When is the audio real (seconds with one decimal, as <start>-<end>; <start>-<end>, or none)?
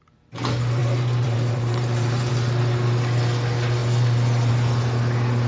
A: 0.0-0.8; 2.3-5.5